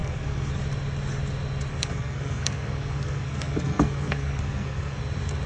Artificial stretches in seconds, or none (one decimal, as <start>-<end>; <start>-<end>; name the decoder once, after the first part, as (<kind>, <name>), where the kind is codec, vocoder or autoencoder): 0.0-0.5 (codec, SNAC); 1.7-5.0